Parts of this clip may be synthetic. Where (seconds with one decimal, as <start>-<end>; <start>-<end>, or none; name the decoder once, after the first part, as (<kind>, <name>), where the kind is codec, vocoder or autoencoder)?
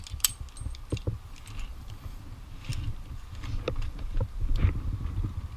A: 1.7-2.2 (vocoder, BigVGAN v2)